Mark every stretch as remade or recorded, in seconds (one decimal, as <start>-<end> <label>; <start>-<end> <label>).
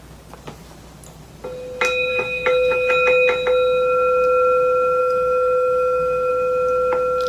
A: 0.0-2.1 recorded; 2.1-2.9 remade; 2.9-5.0 recorded; 5.0-6.3 remade; 6.3-7.3 recorded